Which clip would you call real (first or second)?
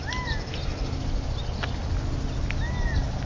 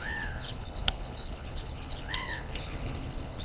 first